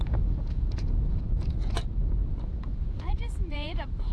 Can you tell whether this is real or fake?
fake